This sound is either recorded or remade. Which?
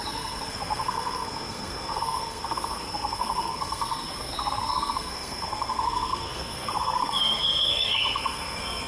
remade